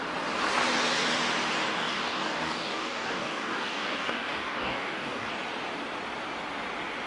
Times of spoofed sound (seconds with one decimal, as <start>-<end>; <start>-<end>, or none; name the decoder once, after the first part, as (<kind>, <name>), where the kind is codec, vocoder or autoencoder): 1.7-5.3 (codec, DAC)